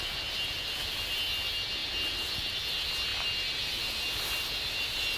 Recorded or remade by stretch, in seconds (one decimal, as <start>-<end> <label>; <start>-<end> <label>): 0.0-5.2 recorded

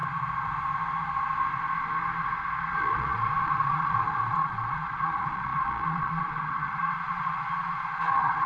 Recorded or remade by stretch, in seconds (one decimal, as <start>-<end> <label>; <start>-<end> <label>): 0.0-2.7 recorded; 2.7-8.5 remade

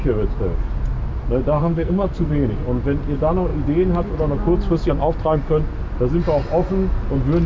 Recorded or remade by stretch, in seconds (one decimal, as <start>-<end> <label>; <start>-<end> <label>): 0.0-1.6 recorded; 1.6-2.3 remade; 2.3-7.5 recorded

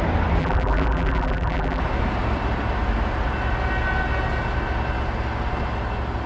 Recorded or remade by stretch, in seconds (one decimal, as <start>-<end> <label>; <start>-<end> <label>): 0.0-0.4 recorded; 0.4-1.8 remade; 1.8-6.3 recorded

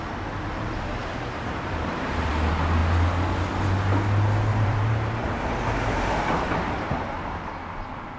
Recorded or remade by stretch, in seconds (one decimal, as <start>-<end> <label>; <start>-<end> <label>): 0.0-1.0 recorded; 1.0-2.3 remade; 2.3-4.5 recorded; 4.5-7.5 remade; 7.5-8.2 recorded

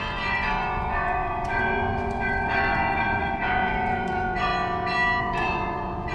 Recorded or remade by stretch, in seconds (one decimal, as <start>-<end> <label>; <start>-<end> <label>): 0.0-4.5 remade; 4.5-5.2 recorded; 5.2-6.1 remade

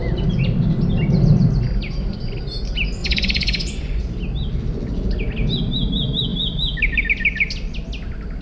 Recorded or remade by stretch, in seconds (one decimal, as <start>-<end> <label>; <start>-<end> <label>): 0.0-3.0 recorded; 3.0-4.0 remade; 4.0-8.4 recorded

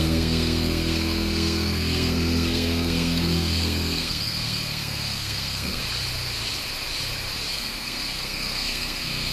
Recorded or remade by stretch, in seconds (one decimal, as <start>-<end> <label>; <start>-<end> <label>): 0.0-5.8 remade; 5.8-7.5 recorded; 7.5-9.3 remade